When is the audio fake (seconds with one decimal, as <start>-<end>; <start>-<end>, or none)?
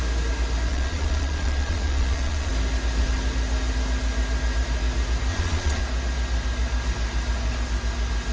0.7-2.5; 5.3-5.8